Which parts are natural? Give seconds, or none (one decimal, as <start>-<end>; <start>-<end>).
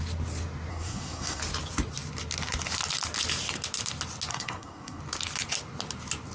0.0-0.7; 1.4-4.3; 5.0-6.3